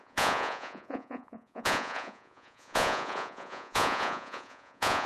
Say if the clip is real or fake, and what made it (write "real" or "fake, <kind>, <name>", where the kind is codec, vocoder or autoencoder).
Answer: fake, vocoder, Vocos